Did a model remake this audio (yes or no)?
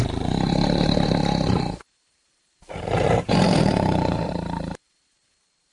yes